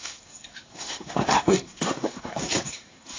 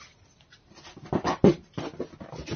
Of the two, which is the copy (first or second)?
first